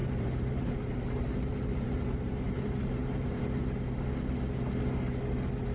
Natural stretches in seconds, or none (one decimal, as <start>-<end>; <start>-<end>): 3.4-5.7